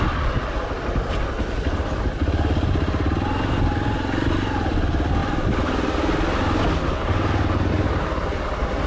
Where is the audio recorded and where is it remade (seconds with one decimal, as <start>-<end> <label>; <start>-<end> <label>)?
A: 0.0-8.9 recorded

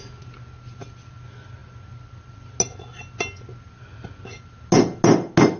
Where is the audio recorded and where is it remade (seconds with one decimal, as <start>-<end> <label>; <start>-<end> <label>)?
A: 0.0-5.6 recorded

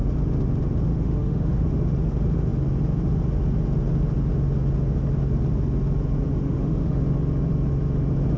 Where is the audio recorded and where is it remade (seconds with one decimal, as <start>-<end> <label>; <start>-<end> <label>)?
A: 0.0-0.9 recorded; 0.9-1.8 remade; 1.8-6.3 recorded; 6.3-7.0 remade; 7.0-8.4 recorded

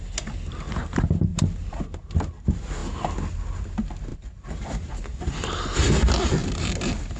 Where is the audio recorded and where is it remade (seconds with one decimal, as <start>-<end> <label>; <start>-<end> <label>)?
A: 0.0-4.1 recorded; 4.1-4.9 remade; 4.9-6.4 recorded; 6.4-7.2 remade

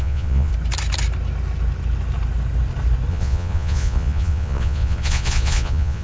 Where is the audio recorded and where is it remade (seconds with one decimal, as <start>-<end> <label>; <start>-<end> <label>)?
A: 0.0-0.5 remade; 0.5-3.1 recorded; 3.1-6.0 remade

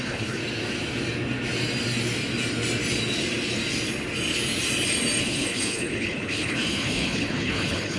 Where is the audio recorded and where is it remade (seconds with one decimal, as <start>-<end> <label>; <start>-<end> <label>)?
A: 0.0-0.4 remade; 0.4-5.2 recorded; 5.2-8.0 remade